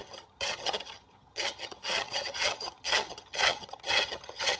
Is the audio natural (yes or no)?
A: no